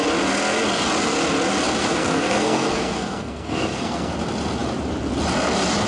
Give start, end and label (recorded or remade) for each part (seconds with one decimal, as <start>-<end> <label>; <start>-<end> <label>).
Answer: 0.0-1.8 recorded; 1.8-4.1 remade; 4.1-5.9 recorded